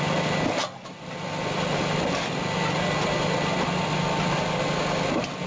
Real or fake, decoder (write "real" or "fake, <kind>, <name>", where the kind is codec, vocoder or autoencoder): real